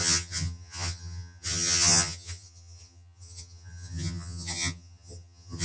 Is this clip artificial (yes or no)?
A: yes